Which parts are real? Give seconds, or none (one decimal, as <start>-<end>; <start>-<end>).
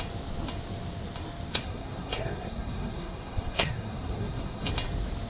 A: 0.0-1.5; 4.7-5.3